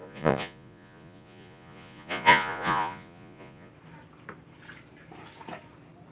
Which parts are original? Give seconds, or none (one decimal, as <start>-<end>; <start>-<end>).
3.7-6.1